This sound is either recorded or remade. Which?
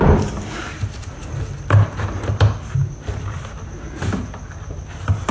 recorded